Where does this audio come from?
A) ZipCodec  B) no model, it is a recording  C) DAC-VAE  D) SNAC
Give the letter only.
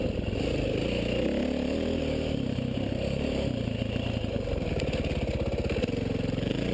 B